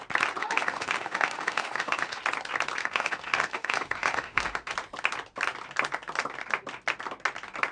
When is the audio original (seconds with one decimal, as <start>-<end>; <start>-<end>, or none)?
0.0-0.4; 2.2-2.8; 4.7-7.7